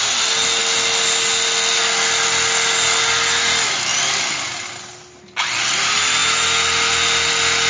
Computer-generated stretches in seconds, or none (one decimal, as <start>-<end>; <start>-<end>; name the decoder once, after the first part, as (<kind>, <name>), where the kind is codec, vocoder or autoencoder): none